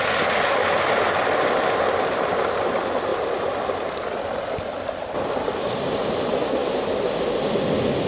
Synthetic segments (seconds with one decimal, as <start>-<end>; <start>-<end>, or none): none